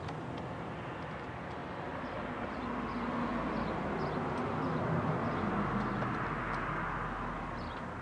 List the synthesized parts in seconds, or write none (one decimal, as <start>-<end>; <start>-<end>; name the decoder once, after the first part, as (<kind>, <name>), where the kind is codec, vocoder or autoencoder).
1.6-2.6 (vocoder, BigVGAN v2); 3.3-3.8